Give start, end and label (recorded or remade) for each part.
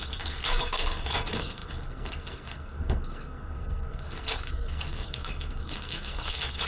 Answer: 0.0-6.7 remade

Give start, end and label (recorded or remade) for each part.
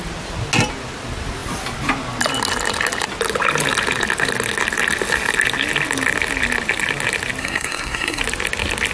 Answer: 0.0-7.4 recorded; 7.4-8.2 remade; 8.2-8.9 recorded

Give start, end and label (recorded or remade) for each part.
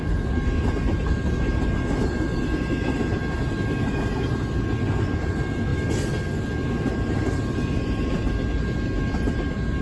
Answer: 0.0-9.8 recorded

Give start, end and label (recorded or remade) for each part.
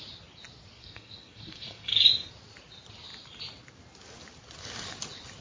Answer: 0.0-0.8 recorded; 0.8-2.3 remade; 2.3-5.4 recorded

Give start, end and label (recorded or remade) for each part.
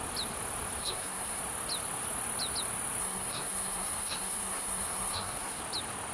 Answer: 0.0-0.8 recorded; 0.8-1.4 remade; 1.4-3.0 recorded; 3.0-5.6 remade; 5.6-6.1 recorded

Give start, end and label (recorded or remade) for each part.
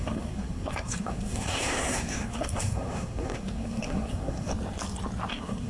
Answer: 0.0-4.5 remade; 4.5-5.3 recorded; 5.3-5.7 remade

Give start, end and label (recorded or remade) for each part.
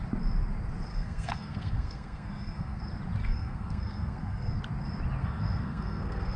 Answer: 0.0-0.9 recorded; 0.9-2.8 remade; 2.8-3.2 recorded; 3.2-4.6 remade; 4.6-5.2 recorded; 5.2-6.4 remade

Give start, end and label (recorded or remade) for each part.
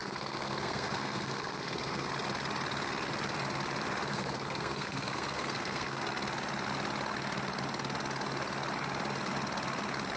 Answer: 0.0-2.1 remade; 2.1-4.1 recorded; 4.1-6.0 remade; 6.0-10.2 recorded